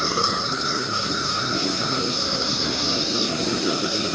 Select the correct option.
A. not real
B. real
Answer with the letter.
A